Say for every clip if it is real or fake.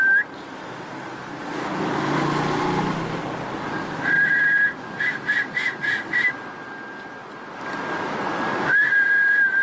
real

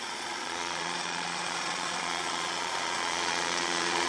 fake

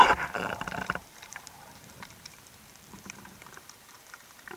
fake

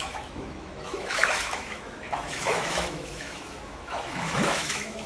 fake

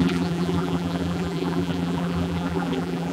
fake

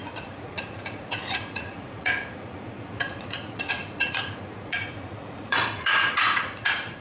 fake